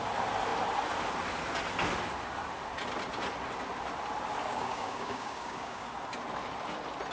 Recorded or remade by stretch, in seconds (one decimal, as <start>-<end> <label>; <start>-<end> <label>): 0.0-4.5 recorded; 4.5-5.9 remade; 5.9-7.1 recorded